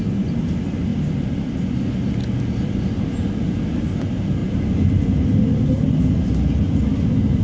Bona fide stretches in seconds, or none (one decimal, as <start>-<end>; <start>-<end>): 0.0-0.9; 1.9-7.4